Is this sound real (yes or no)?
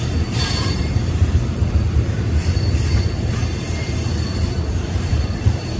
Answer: no